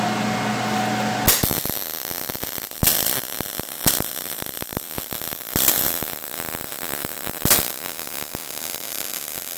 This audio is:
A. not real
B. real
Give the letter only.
B